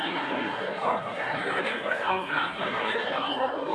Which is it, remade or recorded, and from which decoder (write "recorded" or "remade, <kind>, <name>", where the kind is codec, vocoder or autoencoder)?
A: remade, codec, SNAC